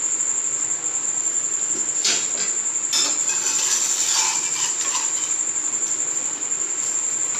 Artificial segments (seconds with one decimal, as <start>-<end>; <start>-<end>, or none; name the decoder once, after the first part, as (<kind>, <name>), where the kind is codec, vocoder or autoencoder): none